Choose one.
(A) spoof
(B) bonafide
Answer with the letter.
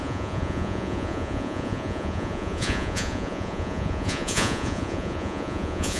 A